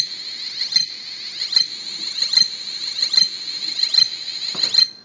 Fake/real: real